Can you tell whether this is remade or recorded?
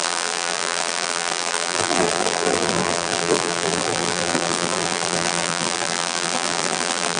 remade